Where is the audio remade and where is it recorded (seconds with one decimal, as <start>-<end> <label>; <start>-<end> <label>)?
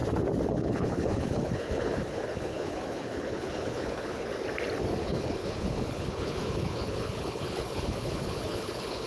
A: 0.0-0.5 recorded; 0.5-4.3 remade; 4.3-5.0 recorded; 5.0-9.1 remade